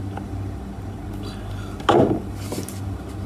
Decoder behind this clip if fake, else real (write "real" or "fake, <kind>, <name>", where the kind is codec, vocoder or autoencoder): real